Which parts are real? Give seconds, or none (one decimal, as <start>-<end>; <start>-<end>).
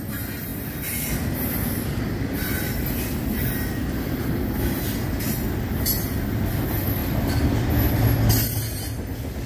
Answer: 0.0-9.5